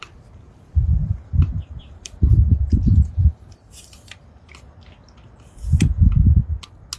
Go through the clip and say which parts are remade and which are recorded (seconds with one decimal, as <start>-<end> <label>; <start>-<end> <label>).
0.0-4.2 remade; 4.2-7.0 recorded